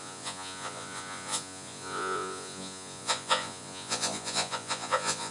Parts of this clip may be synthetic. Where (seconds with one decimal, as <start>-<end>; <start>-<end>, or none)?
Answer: 0.0-5.3